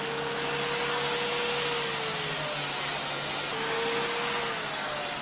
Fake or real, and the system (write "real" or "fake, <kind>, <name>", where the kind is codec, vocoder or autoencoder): real